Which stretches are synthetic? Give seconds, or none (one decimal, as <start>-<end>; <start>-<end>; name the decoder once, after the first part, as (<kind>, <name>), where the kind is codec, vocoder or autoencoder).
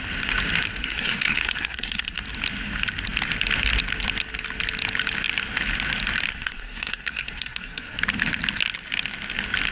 0.8-2.2 (codec, SNAC); 6.3-8.0